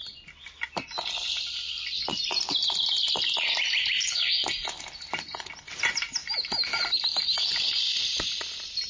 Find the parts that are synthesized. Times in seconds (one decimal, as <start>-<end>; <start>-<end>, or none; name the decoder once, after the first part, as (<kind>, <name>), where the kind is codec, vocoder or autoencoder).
2.1-4.3 (vocoder, BigVGAN v2); 6.2-6.9